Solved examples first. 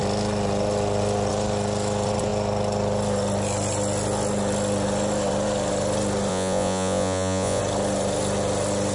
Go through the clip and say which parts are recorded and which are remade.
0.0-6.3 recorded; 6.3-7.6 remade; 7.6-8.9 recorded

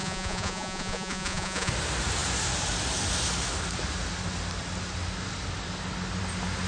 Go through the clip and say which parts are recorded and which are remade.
0.0-1.7 remade; 1.7-6.7 recorded

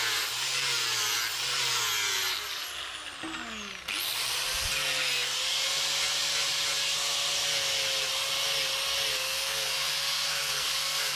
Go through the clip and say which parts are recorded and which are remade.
0.0-9.1 recorded; 9.1-11.2 remade

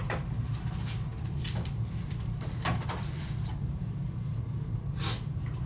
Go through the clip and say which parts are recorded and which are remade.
0.0-5.7 recorded

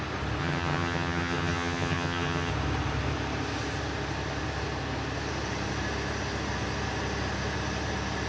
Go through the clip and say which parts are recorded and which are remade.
0.0-0.4 recorded; 0.4-2.5 remade; 2.5-8.3 recorded

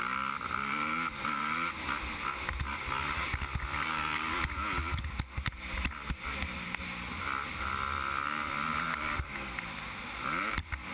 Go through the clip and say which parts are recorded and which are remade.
0.0-10.9 recorded